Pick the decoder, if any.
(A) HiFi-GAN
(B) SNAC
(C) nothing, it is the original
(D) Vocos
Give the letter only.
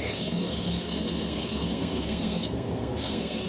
B